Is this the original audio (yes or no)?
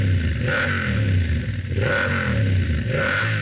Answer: yes